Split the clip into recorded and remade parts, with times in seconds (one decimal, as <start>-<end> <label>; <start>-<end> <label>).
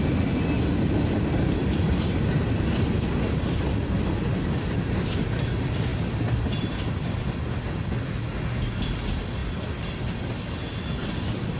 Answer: 0.0-1.6 recorded; 1.6-2.3 remade; 2.3-5.9 recorded; 5.9-7.2 remade; 7.2-11.6 recorded